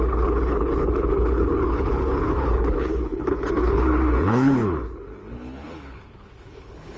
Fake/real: fake